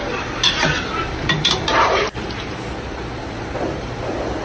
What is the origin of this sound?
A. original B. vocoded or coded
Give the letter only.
A